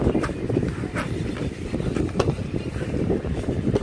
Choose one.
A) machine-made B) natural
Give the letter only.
B